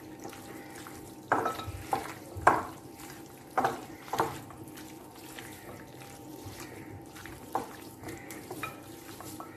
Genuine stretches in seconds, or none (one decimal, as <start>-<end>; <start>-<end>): 0.0-2.0; 4.4-6.3